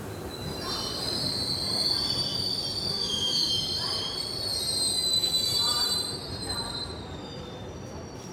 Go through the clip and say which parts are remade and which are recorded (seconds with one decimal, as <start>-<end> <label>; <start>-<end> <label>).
0.0-2.9 recorded; 2.9-3.5 remade; 3.5-8.3 recorded